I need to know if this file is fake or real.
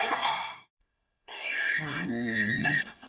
fake